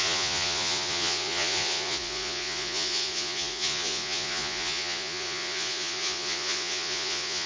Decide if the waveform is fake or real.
fake